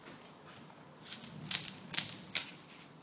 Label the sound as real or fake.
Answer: real